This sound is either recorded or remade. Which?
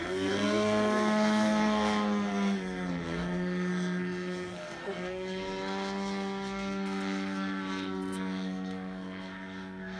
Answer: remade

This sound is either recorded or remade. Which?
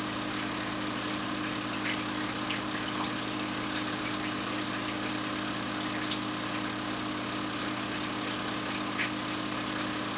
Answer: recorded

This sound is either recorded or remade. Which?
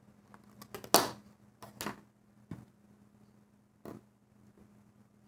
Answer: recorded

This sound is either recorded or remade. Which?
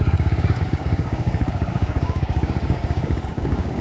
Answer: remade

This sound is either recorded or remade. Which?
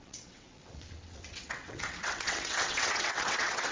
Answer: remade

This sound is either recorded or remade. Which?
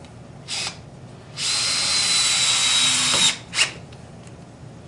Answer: recorded